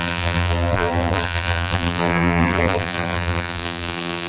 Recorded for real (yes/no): no